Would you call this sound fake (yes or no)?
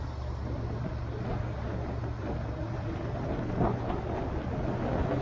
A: no